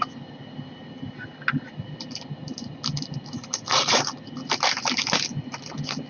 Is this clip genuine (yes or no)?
yes